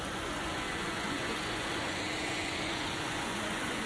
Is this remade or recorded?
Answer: remade